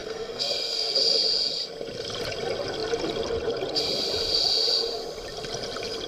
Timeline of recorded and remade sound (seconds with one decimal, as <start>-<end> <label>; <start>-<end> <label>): 0.0-1.0 remade; 1.0-6.1 recorded